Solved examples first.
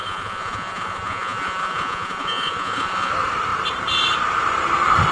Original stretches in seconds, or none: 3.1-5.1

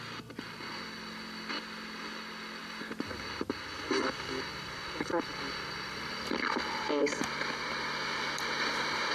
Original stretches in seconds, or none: 0.0-9.1